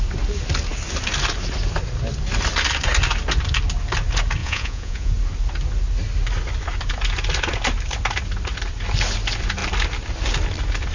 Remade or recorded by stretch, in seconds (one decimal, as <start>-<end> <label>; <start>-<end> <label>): 0.0-4.4 recorded; 4.4-5.1 remade; 5.1-10.9 recorded